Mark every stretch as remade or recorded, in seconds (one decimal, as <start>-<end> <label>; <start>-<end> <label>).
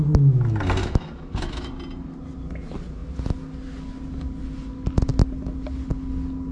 0.0-0.8 recorded; 0.8-1.7 remade; 1.7-6.5 recorded